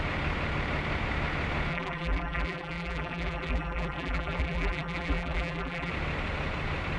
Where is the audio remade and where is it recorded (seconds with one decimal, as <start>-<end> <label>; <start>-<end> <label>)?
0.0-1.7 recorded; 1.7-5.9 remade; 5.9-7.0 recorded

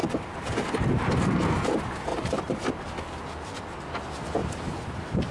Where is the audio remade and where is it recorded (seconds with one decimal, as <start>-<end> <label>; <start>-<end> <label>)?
0.0-0.9 remade; 0.9-2.1 recorded; 2.1-3.2 remade; 3.2-4.4 recorded; 4.4-5.3 remade

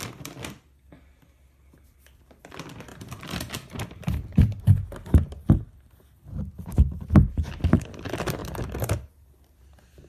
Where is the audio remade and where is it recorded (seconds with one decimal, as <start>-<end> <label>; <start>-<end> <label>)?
0.0-2.9 recorded; 2.9-3.5 remade; 3.5-10.1 recorded